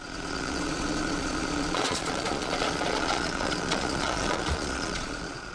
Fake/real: fake